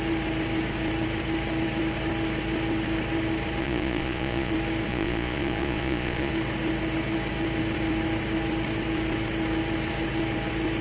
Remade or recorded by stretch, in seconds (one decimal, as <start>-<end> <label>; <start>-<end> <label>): 0.0-3.6 recorded; 3.6-4.5 remade; 4.5-4.9 recorded; 4.9-6.3 remade; 6.3-10.8 recorded